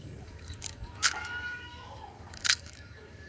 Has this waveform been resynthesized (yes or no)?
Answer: yes